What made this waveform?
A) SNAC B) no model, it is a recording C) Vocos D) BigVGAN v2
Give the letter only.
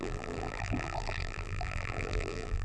D